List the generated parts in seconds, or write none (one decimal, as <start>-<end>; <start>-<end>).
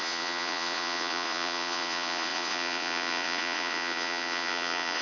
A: 0.0-5.0